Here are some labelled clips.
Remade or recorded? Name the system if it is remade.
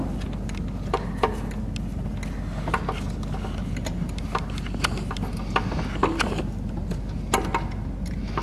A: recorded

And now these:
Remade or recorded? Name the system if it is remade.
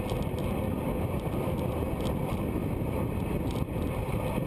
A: recorded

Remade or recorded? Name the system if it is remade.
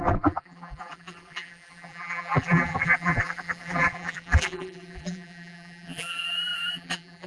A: remade, vocoder, BigVGAN v2